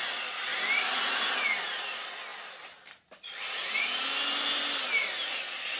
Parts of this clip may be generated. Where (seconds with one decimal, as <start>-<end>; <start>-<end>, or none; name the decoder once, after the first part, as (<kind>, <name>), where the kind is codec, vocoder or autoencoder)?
none